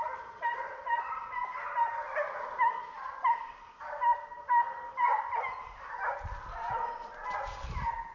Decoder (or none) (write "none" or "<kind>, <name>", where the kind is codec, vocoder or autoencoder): none